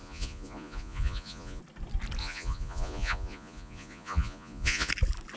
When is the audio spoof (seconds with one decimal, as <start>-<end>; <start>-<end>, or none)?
0.0-1.6; 2.2-4.9